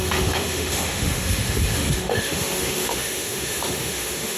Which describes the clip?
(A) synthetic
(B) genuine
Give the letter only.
A